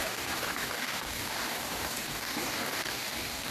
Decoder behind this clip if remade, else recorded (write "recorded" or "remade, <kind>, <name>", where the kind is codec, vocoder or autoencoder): remade, codec, DAC